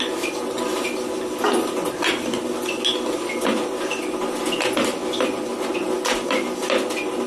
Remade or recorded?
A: recorded